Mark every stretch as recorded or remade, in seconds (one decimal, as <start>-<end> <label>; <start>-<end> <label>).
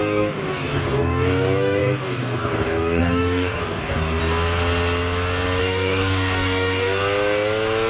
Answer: 0.0-4.2 remade; 4.2-5.6 recorded; 5.6-7.0 remade; 7.0-7.9 recorded